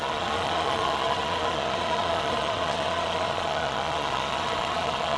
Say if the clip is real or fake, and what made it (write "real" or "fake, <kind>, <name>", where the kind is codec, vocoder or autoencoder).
fake, vocoder, Vocos